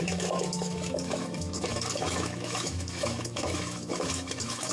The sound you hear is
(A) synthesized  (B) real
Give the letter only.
A